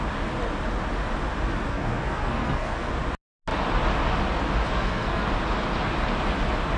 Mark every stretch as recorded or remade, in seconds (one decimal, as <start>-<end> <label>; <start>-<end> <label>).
0.0-1.7 recorded; 1.7-2.9 remade; 2.9-4.7 recorded; 4.7-5.3 remade; 5.3-6.8 recorded